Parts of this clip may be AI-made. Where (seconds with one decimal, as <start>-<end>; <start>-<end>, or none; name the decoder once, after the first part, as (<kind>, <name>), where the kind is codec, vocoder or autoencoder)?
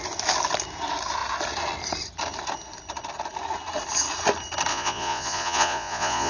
4.7-6.3 (vocoder, Vocos)